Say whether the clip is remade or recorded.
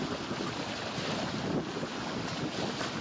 recorded